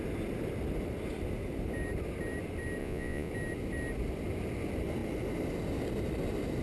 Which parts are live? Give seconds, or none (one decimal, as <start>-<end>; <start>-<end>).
0.0-2.8; 3.3-6.6